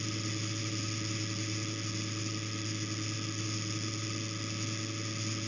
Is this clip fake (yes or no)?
no